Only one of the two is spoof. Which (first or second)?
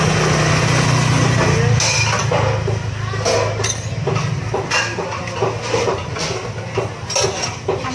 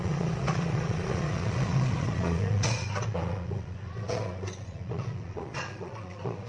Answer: second